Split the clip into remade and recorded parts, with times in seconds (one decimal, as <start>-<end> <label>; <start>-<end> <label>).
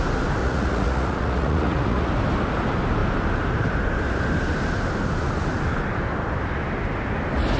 0.0-0.4 recorded; 0.4-2.1 remade; 2.1-7.6 recorded